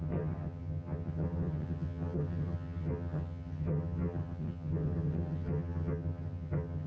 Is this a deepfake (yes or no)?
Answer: yes